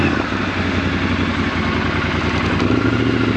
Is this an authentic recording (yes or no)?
yes